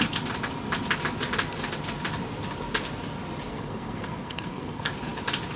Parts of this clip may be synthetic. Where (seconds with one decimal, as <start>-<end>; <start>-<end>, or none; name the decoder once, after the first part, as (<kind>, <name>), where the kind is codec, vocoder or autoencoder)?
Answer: 3.5-4.9 (codec, SNAC)